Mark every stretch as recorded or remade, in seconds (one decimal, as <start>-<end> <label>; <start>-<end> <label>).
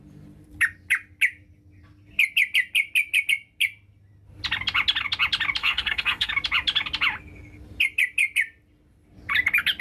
0.0-5.6 recorded; 5.6-6.3 remade; 6.3-9.8 recorded